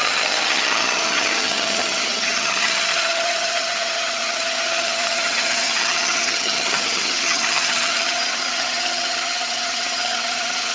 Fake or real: fake